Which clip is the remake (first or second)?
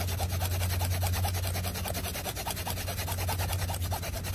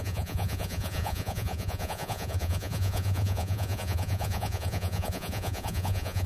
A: second